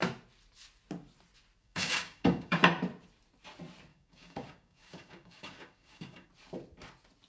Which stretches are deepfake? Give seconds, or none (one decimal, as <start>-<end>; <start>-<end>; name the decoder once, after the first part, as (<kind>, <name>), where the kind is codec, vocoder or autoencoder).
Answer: 1.6-2.6 (codec, DAC); 3.9-6.3